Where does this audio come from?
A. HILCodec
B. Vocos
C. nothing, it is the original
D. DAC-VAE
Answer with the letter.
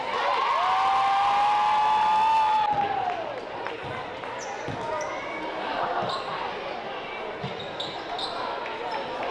C